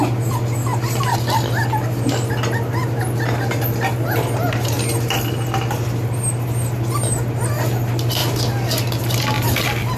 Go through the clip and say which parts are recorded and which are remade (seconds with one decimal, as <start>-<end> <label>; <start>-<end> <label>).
0.0-10.0 recorded